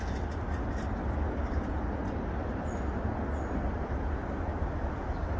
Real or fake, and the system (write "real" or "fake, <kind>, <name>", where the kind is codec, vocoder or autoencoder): real